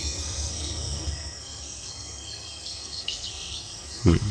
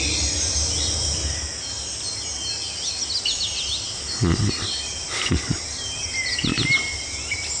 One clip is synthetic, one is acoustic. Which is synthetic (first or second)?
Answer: first